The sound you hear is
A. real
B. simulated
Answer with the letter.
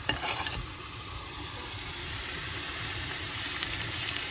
B